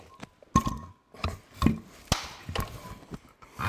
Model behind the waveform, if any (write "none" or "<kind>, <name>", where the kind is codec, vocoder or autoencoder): none